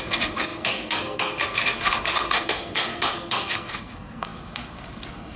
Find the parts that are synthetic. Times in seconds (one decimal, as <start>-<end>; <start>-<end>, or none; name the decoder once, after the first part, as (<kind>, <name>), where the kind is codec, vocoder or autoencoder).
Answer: 0.0-5.4 (codec, SNAC)